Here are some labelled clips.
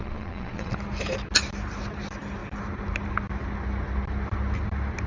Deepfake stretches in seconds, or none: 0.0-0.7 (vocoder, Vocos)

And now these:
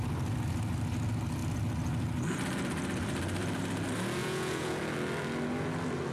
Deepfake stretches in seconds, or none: 4.2-4.8 (vocoder, Vocos)

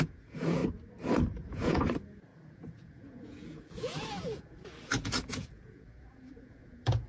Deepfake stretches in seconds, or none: 0.0-0.6 (vocoder, Vocos); 1.5-7.1

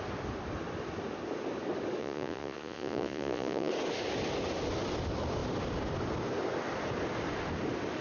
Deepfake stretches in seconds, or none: 2.0-3.7 (vocoder, Vocos)

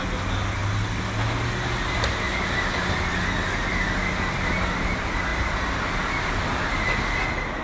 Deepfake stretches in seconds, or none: none

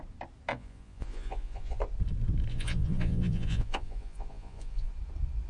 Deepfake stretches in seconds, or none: 0.5-1.8 (vocoder, Vocos); 2.5-4.9

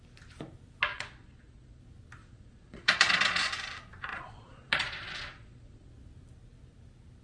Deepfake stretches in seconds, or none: 0.9-1.8 (vocoder, Vocos); 2.2-3.5; 4.1-5.9